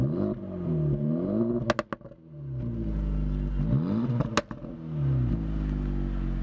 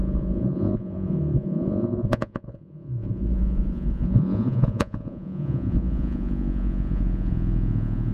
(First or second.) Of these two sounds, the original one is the first